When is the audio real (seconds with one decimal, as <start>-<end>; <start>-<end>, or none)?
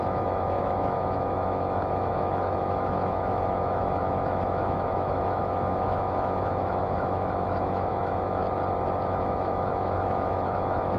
8.4-9.1